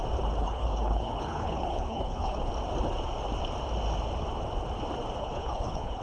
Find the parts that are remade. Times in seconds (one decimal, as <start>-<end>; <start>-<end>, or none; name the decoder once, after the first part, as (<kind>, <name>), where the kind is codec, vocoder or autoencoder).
0.4-2.5 (codec, HILCodec); 5.2-6.0